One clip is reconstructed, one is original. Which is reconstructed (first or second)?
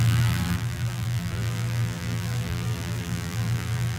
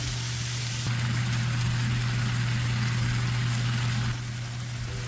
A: first